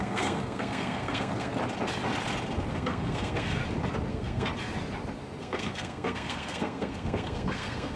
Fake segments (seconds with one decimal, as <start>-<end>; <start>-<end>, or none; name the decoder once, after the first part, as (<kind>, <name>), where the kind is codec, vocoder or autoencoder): 0.0-1.5 (codec, SNAC); 2.7-3.6; 4.1-4.5; 5.4-8.0